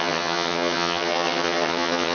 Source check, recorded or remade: remade